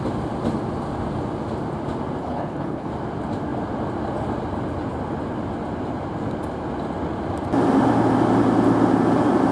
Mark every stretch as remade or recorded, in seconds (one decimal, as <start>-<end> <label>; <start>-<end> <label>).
0.0-2.2 recorded; 2.2-2.9 remade; 2.9-9.5 recorded